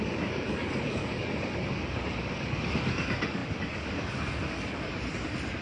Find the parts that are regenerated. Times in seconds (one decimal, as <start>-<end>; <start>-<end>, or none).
0.0-4.9